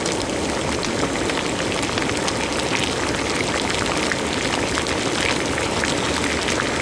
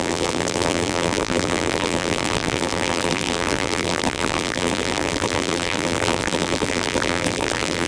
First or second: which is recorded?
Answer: first